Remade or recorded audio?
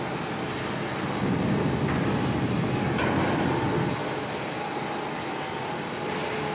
recorded